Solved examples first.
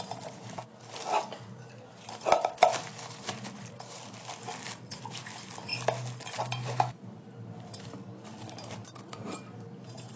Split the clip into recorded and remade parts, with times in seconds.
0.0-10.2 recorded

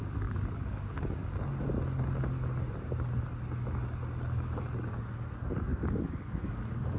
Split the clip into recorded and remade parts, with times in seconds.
0.0-1.2 remade; 1.2-5.3 recorded; 5.3-7.0 remade

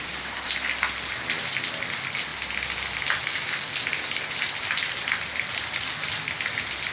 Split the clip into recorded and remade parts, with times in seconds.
0.0-6.9 recorded

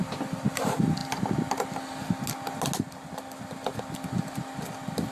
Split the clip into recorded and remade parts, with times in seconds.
0.0-5.1 recorded

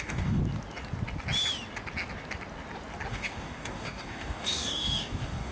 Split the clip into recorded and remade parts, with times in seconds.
0.0-0.4 remade; 0.4-3.1 recorded; 3.1-5.5 remade